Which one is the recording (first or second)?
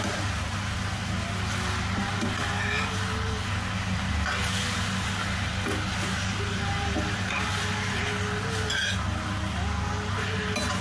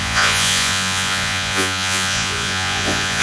first